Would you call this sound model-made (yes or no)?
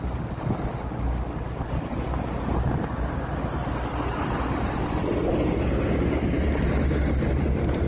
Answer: no